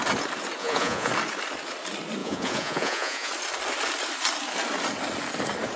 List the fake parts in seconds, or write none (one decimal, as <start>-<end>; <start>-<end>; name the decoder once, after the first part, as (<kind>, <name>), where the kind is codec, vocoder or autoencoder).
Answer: 0.6-1.1 (vocoder, Vocos); 2.2-3.3